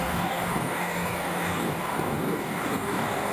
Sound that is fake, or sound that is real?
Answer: fake